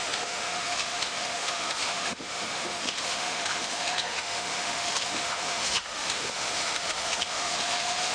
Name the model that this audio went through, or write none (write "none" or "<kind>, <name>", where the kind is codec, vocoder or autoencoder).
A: autoencoder, DAC-VAE